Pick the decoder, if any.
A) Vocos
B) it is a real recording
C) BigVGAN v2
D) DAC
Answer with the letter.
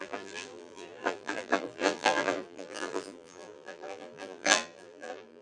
C